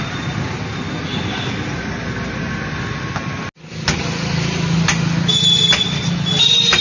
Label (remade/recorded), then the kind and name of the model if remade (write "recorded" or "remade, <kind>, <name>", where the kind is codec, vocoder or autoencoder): recorded